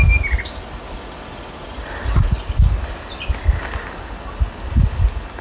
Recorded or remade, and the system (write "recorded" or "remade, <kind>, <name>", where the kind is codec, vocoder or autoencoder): recorded